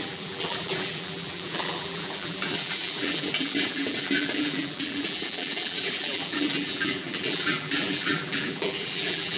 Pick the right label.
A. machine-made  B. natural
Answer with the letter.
A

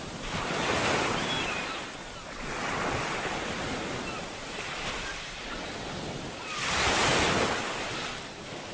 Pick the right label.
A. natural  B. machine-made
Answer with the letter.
A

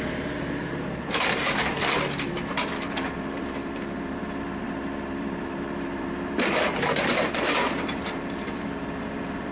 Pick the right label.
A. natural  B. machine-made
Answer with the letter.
B